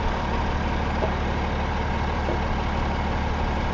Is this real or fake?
real